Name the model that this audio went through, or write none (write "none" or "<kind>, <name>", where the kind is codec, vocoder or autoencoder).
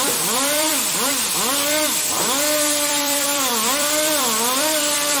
vocoder, BigVGAN v2